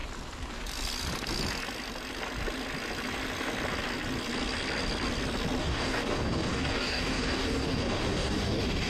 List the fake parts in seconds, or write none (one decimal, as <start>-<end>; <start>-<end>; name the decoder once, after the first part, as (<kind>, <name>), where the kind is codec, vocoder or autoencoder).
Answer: 5.6-8.9 (codec, DAC)